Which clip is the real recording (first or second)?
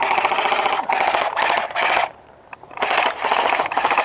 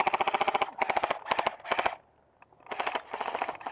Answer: second